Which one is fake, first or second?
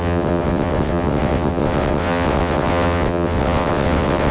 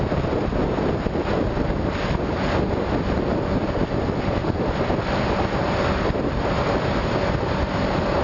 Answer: first